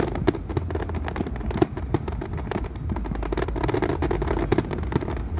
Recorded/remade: recorded